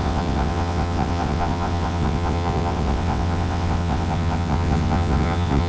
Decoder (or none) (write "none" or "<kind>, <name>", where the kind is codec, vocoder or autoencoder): vocoder, WaveNeXt